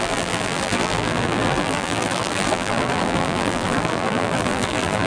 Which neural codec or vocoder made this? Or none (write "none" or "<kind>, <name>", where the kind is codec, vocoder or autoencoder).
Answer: vocoder, BigVGAN v2